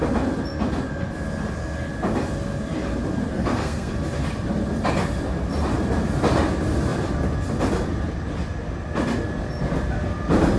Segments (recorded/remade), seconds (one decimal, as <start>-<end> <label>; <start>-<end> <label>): 0.0-3.3 recorded; 3.3-3.9 remade; 3.9-10.6 recorded